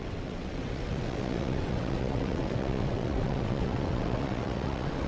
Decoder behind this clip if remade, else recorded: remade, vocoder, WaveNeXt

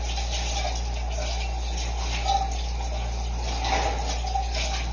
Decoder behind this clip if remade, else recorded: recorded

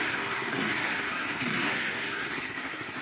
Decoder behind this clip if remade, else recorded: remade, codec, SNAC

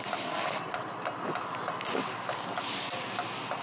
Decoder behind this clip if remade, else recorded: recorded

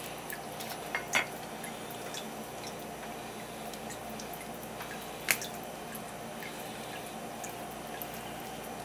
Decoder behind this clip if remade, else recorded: recorded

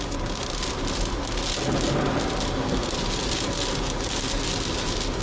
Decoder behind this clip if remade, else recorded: recorded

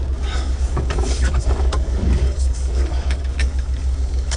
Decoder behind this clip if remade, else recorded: remade, codec, DAC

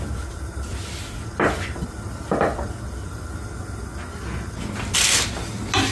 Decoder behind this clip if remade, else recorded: recorded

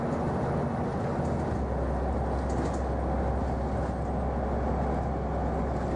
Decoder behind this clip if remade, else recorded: recorded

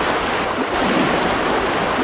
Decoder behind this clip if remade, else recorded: recorded